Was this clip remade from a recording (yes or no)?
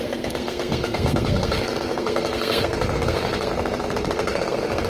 yes